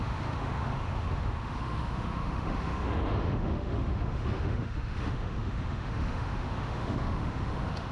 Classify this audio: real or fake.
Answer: fake